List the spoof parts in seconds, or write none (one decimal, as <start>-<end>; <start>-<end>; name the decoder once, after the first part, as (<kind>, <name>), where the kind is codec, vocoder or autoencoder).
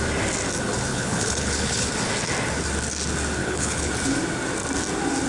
0.9-1.9 (codec, HILCodec); 3.4-3.9